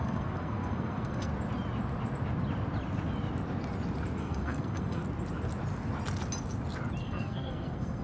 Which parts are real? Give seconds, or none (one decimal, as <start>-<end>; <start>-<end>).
1.3-4.2; 5.0-7.0